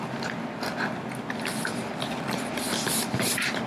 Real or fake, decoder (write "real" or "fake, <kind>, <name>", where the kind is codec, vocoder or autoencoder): real